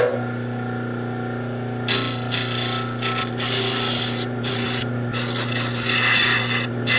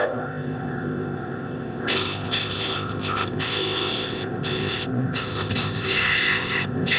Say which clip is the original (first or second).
first